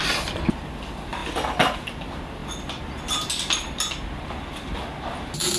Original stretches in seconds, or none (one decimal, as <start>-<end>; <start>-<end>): 0.0-5.6